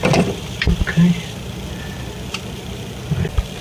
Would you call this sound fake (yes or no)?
yes